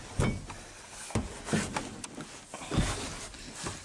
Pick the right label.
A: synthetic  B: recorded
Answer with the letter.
B